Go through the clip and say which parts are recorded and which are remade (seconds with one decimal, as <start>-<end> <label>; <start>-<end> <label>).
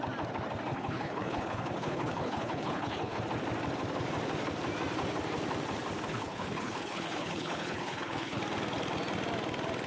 0.0-0.7 recorded; 0.7-3.2 remade; 3.2-6.1 recorded; 6.1-8.4 remade; 8.4-9.9 recorded